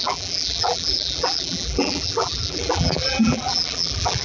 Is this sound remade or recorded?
remade